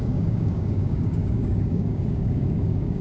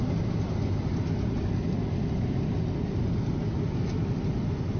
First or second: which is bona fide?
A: second